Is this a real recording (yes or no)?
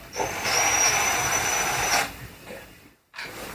no